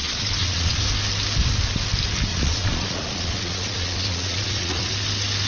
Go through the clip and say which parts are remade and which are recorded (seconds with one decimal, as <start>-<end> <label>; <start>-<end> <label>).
0.0-0.8 remade; 0.8-2.3 recorded; 2.3-4.9 remade; 4.9-5.5 recorded